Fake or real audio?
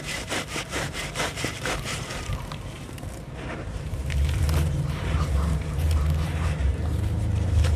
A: fake